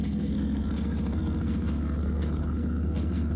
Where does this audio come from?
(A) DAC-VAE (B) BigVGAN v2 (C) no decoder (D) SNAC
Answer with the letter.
D